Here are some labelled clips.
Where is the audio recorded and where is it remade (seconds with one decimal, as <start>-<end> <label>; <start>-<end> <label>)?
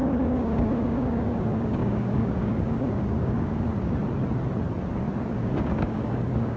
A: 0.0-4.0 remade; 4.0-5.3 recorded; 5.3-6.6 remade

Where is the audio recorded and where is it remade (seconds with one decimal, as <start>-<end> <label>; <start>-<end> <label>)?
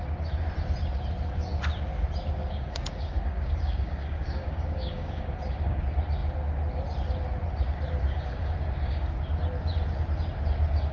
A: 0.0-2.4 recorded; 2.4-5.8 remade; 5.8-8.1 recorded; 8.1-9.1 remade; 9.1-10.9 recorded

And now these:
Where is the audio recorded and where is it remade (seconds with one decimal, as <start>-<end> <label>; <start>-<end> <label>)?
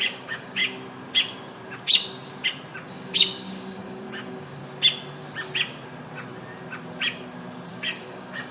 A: 0.0-0.6 remade; 0.6-2.9 recorded; 2.9-4.6 remade; 4.6-7.7 recorded; 7.7-8.5 remade